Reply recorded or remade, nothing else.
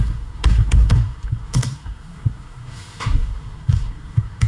remade